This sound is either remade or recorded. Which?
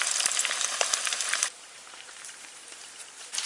remade